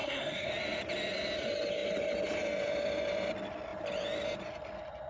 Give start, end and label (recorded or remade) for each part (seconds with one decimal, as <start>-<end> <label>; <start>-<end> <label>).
0.0-0.5 remade; 0.5-5.1 recorded